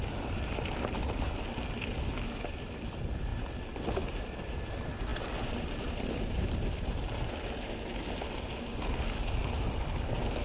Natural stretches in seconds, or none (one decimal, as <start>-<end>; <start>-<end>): 0.0-10.4